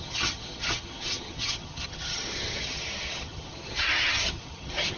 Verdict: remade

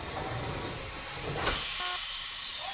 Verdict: recorded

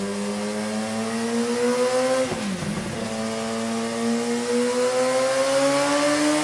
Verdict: recorded